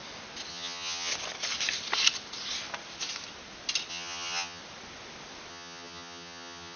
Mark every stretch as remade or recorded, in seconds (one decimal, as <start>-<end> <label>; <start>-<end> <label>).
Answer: 0.0-0.5 recorded; 0.5-1.1 remade; 1.1-3.9 recorded; 3.9-4.6 remade; 4.6-5.5 recorded; 5.5-6.8 remade